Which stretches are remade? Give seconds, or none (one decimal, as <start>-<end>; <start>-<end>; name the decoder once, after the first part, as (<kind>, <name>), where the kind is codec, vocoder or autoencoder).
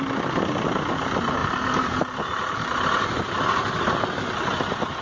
none